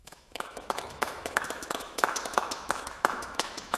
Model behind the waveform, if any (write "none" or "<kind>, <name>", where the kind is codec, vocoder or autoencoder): autoencoder, DAC-VAE